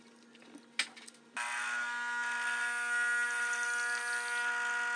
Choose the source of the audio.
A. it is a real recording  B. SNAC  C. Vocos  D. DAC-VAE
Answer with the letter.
A